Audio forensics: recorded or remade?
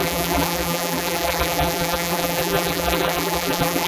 remade